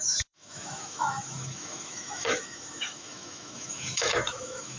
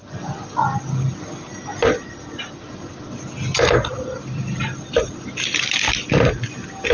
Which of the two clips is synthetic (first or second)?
first